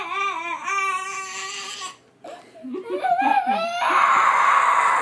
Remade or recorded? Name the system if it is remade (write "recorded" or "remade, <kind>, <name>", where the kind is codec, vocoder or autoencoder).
recorded